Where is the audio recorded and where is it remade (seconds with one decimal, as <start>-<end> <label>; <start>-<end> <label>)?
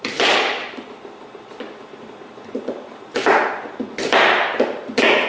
0.0-5.3 recorded